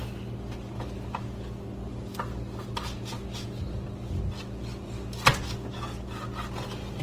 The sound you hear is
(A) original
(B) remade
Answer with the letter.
A